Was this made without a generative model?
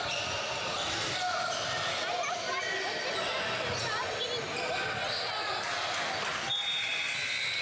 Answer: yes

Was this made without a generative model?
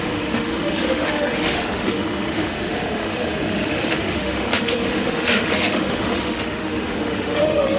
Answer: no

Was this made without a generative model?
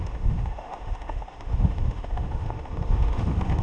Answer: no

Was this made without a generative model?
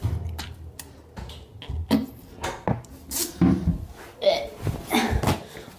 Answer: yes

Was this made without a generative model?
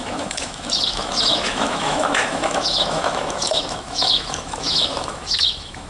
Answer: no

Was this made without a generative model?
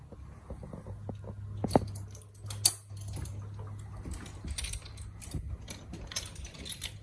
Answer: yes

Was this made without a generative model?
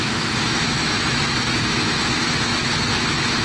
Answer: no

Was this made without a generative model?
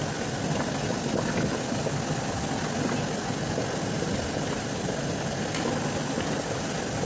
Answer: yes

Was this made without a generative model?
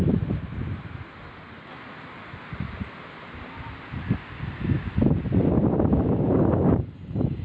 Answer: yes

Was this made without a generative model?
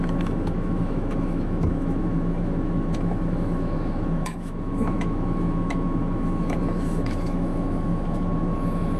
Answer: no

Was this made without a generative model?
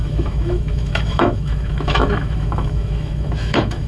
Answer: no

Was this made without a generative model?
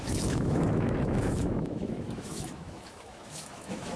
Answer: no